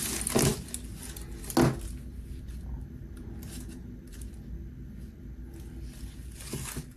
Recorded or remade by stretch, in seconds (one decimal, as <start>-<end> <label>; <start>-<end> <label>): 0.0-7.0 recorded